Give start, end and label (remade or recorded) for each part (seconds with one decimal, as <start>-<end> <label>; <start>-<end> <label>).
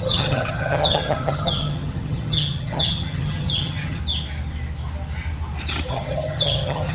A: 0.0-4.0 remade; 4.0-5.9 recorded; 5.9-6.9 remade